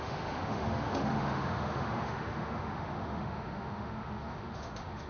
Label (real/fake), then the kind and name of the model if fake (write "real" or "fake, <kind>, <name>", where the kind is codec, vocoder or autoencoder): fake, autoencoder, DAC-VAE